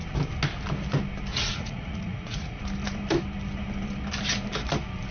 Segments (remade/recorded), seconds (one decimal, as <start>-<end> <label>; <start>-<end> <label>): 0.0-1.3 recorded; 1.3-2.6 remade; 2.6-5.1 recorded